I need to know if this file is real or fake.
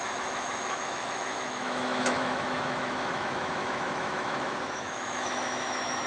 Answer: fake